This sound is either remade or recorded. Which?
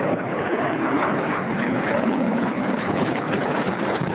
remade